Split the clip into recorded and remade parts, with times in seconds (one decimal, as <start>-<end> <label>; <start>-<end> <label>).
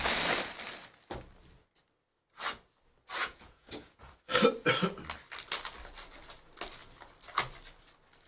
0.0-3.2 recorded; 3.2-4.1 remade; 4.1-8.3 recorded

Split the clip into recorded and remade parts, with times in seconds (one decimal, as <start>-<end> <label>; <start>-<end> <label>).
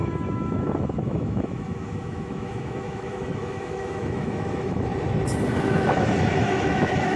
0.0-4.9 remade; 4.9-5.5 recorded; 5.5-7.2 remade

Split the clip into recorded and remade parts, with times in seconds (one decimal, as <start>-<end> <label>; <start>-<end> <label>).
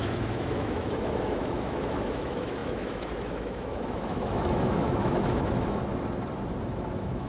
0.0-5.8 remade; 5.8-6.6 recorded; 6.6-7.3 remade